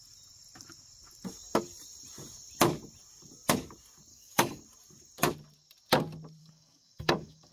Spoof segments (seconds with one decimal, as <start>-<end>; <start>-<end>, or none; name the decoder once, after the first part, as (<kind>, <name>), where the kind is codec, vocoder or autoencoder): 4.1-4.6 (codec, DAC); 6.4-7.5